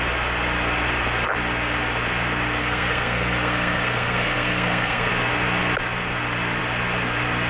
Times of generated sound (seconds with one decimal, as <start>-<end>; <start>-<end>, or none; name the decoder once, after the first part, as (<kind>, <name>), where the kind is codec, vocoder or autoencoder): 2.6-5.1 (codec, SNAC)